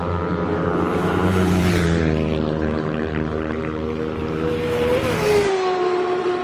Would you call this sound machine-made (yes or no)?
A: yes